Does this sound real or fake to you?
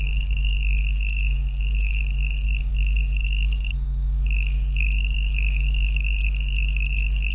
fake